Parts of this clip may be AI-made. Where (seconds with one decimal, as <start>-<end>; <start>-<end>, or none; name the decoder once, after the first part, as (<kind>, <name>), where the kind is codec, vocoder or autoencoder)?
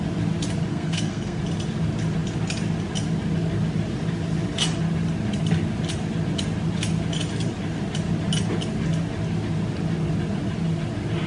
0.7-1.4 (codec, SNAC)